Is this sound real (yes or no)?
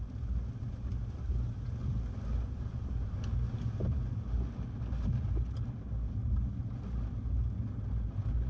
yes